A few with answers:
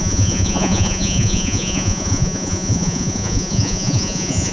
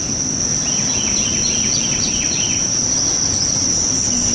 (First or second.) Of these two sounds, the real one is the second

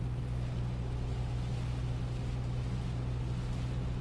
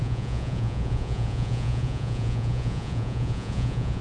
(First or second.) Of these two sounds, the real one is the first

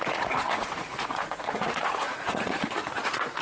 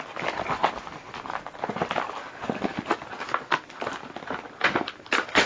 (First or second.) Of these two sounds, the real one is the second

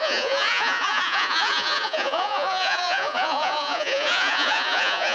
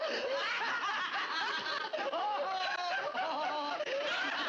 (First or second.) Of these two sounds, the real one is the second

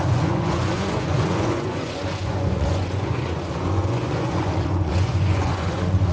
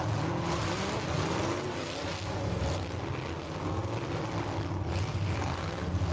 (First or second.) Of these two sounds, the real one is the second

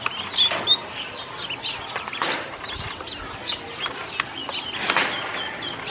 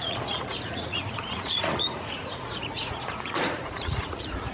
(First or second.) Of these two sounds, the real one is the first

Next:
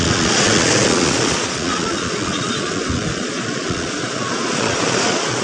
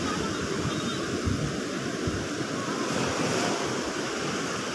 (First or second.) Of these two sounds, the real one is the second